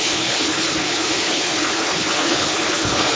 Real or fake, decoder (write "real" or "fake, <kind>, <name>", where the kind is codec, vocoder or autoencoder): fake, codec, HILCodec